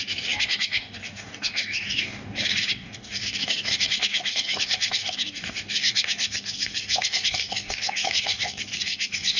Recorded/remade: remade